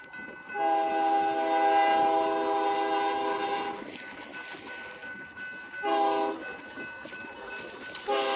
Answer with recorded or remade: recorded